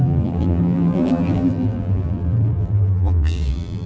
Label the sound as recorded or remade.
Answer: remade